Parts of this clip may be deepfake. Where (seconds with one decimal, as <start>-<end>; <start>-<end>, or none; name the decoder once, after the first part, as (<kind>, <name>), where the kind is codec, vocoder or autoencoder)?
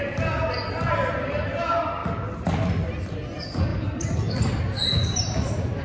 none